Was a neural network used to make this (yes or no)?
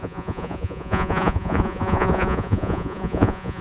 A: yes